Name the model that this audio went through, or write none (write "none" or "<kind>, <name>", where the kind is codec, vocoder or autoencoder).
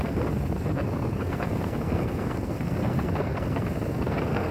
codec, SNAC